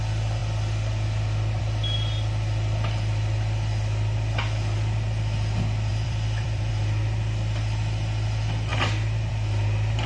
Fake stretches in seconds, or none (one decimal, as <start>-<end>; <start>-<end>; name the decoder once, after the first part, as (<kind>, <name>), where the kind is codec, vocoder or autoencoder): 5.9-6.7 (vocoder, BigVGAN v2)